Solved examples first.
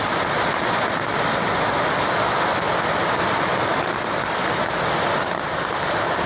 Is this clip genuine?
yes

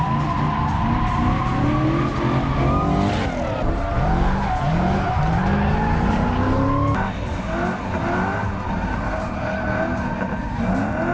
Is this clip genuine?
yes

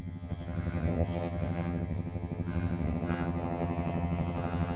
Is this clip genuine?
no